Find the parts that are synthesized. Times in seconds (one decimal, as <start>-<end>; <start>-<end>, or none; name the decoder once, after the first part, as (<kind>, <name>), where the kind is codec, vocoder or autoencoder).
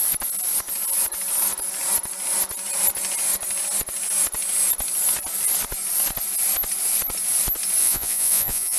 7.8-8.8 (vocoder, Vocos)